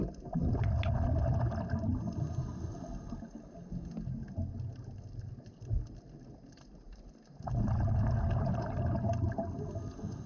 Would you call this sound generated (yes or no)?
no